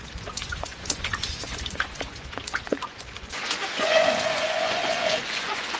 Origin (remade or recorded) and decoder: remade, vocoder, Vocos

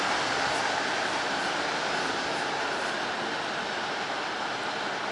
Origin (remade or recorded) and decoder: recorded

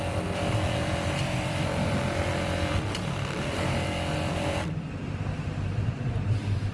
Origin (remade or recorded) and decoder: remade, vocoder, BigVGAN v2